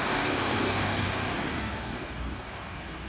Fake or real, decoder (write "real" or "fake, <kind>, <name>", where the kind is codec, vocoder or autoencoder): fake, codec, DAC